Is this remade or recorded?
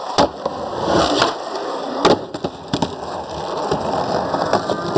recorded